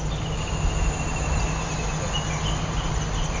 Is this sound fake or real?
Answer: real